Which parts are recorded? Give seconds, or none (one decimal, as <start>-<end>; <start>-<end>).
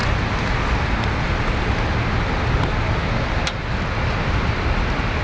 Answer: 0.0-5.2